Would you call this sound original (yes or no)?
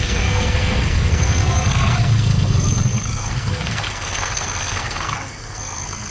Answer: no